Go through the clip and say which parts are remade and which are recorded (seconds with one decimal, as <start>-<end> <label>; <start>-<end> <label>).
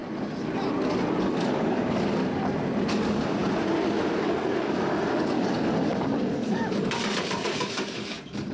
0.0-1.2 recorded; 1.2-2.2 remade; 2.2-2.9 recorded; 2.9-3.4 remade; 3.4-4.2 recorded; 4.2-8.5 remade